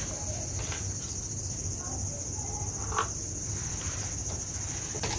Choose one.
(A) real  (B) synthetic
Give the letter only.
A